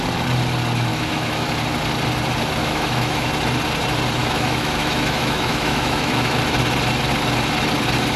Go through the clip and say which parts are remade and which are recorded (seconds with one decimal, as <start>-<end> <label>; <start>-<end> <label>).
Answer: 0.0-0.9 recorded; 0.9-1.5 remade; 1.5-2.6 recorded; 2.6-3.3 remade; 3.3-4.2 recorded; 4.2-6.4 remade; 6.4-8.2 recorded